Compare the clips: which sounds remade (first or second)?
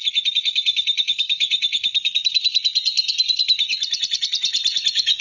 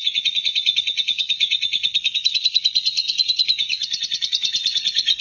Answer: second